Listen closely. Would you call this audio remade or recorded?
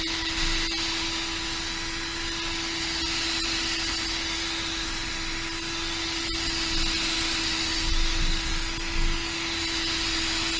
recorded